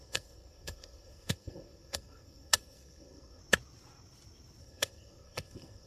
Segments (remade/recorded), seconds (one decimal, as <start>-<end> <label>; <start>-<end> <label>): 0.0-3.4 remade; 3.4-4.6 recorded; 4.6-5.9 remade